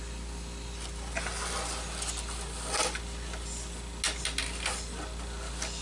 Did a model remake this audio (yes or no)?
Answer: no